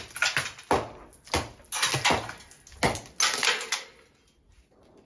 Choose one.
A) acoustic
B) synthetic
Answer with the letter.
A